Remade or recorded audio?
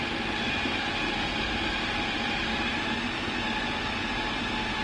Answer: recorded